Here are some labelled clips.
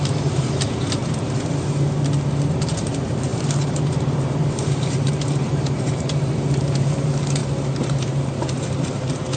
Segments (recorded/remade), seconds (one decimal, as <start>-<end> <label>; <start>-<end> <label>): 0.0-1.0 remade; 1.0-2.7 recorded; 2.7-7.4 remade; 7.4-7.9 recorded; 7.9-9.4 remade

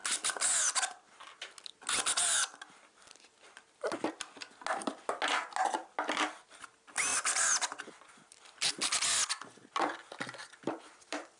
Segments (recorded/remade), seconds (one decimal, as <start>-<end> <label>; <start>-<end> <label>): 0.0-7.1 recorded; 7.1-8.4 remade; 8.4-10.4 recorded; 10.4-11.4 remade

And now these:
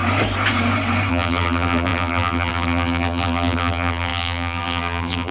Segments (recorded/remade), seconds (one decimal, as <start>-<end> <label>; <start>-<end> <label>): 0.0-1.1 recorded; 1.1-5.3 remade

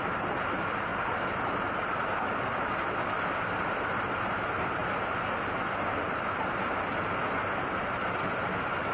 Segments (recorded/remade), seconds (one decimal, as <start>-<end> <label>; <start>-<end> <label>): 0.0-0.9 remade; 0.9-3.7 recorded; 3.7-4.8 remade; 4.8-7.8 recorded; 7.8-8.9 remade

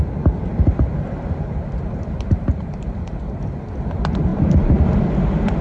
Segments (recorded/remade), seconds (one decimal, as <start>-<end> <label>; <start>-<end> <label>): 0.0-0.5 recorded; 0.5-3.2 remade; 3.2-4.3 recorded; 4.3-5.1 remade; 5.1-5.6 recorded